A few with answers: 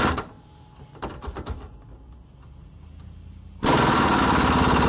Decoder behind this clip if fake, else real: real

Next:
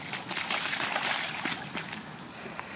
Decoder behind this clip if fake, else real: real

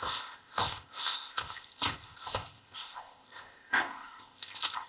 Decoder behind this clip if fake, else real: fake, codec, ZipCodec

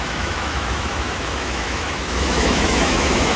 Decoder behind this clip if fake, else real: fake, autoencoder, DAC-VAE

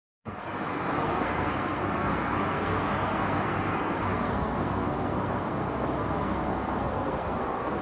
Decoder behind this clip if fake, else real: fake, codec, SNAC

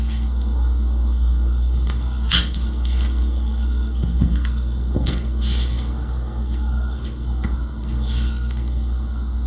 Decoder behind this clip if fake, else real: fake, codec, SNAC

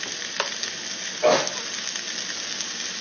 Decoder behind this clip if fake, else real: real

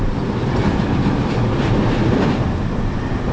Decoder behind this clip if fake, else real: fake, vocoder, BigVGAN v2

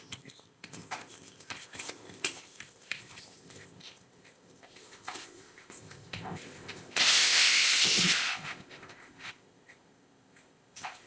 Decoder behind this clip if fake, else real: fake, codec, ZipCodec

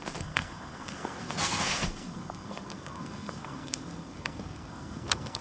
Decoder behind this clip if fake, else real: fake, codec, SNAC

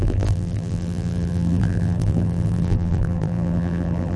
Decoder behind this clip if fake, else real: fake, vocoder, BigVGAN v2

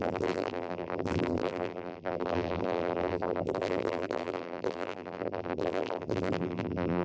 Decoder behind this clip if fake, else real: fake, vocoder, BigVGAN v2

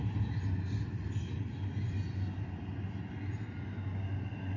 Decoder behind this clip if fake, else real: real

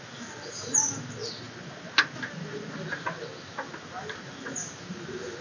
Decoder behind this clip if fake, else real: real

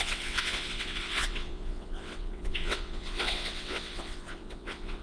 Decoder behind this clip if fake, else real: fake, vocoder, WaveNeXt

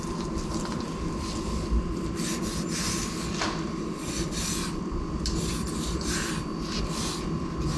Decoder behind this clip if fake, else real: real